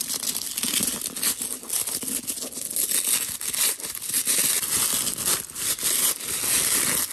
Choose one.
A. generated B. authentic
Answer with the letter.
B